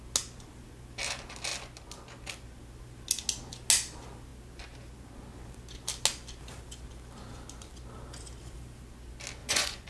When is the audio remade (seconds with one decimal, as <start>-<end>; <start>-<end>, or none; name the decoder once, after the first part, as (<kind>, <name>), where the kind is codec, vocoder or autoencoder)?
9.4-9.9 (vocoder, Vocos)